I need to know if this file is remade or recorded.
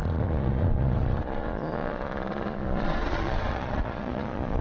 remade